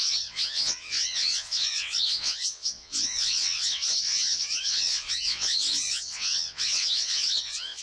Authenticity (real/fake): fake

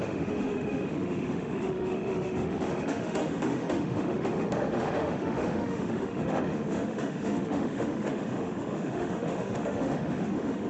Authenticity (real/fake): fake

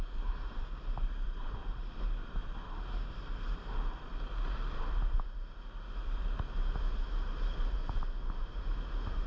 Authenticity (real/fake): real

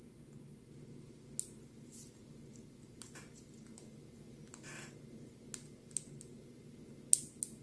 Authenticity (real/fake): real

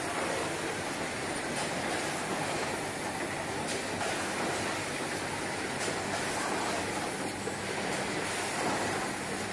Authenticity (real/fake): real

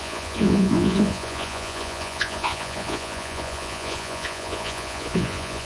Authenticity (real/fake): fake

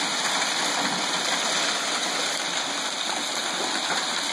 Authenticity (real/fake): real